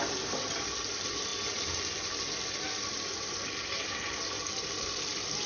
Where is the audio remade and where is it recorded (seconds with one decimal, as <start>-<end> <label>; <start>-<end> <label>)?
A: 0.0-5.5 recorded